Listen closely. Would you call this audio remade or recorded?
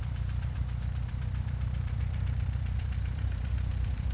remade